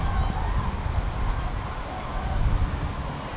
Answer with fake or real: real